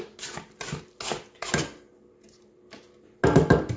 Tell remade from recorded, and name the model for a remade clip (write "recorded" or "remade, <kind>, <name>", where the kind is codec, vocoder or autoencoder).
recorded